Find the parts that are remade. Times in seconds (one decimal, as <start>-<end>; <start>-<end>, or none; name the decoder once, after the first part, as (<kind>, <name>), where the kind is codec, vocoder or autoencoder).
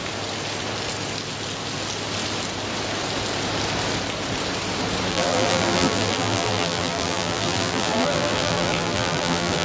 5.1-9.6 (vocoder, BigVGAN v2)